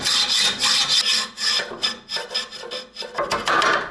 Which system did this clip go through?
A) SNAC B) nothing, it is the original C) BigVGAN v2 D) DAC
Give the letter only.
B